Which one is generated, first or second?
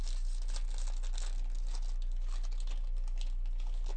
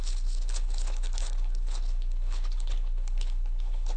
second